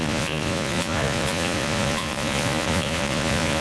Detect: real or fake fake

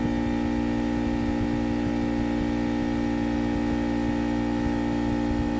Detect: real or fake real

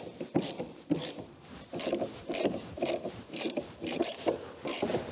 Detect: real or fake fake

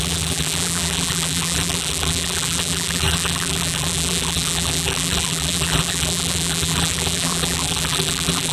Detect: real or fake fake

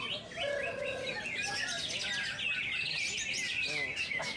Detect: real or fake real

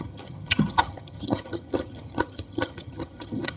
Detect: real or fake fake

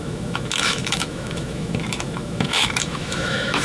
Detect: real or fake fake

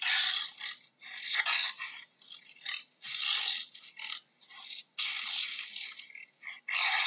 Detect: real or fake real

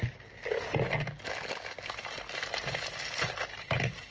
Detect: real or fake real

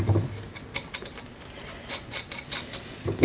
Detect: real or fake real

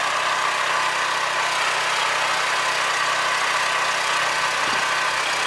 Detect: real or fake real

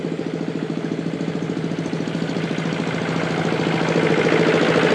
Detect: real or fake real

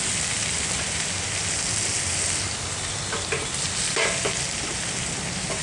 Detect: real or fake real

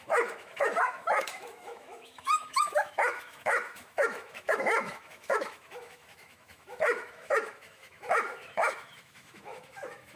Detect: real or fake fake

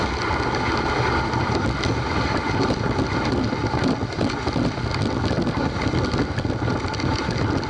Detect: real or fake real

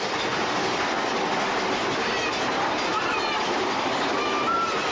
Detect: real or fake real